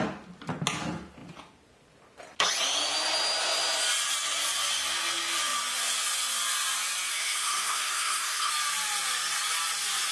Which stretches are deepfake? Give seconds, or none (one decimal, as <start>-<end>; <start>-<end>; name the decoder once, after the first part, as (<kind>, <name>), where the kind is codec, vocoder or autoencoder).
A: 7.1-8.5 (codec, SNAC)